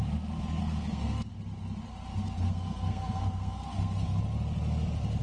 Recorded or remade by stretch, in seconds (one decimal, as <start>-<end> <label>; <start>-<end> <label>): 0.0-0.6 recorded; 0.6-1.3 remade; 1.3-2.1 recorded; 2.1-4.2 remade; 4.2-5.2 recorded